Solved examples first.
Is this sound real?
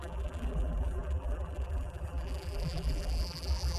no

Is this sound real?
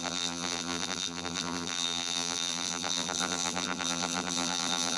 no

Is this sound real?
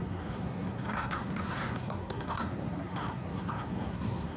no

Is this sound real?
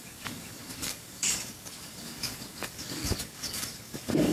no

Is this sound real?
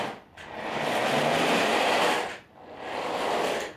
yes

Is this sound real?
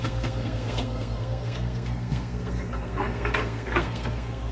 no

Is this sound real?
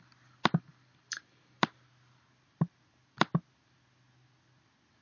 yes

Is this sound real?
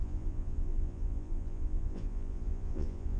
no